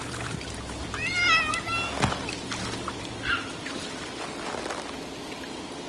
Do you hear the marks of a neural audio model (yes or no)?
no